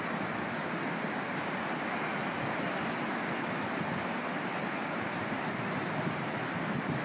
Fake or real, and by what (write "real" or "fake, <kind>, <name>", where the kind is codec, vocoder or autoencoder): real